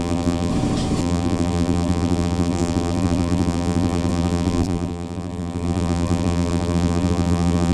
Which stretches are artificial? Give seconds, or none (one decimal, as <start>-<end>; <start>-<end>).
0.0-0.5; 1.0-7.7